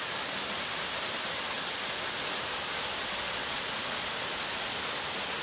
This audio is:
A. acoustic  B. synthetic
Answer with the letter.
A